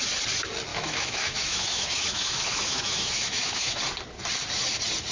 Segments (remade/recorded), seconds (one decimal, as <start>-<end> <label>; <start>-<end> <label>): 0.0-0.7 recorded; 0.7-3.8 remade; 3.8-5.1 recorded